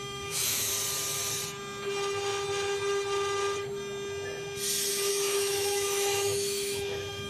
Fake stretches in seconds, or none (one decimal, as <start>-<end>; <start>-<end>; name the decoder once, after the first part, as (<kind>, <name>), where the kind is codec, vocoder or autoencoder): 0.0-0.7 (autoencoder, DAC-VAE); 5.1-7.3